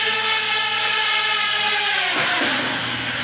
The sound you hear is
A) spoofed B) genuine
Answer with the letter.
B